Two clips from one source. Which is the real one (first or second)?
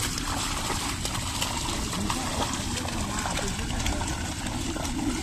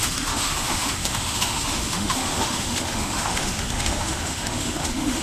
first